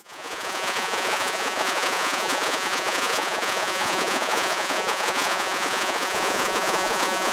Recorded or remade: remade